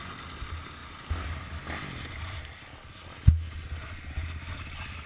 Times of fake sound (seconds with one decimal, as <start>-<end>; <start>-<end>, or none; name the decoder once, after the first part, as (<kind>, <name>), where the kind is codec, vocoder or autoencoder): none